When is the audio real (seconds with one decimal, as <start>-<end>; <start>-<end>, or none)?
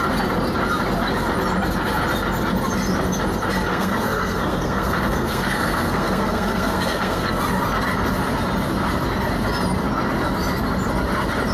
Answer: 0.0-3.7; 7.4-11.5